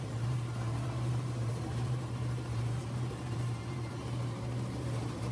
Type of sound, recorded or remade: remade